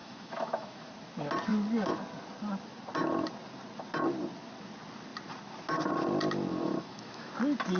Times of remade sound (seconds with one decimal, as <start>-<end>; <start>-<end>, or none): 0.0-0.9; 6.5-7.3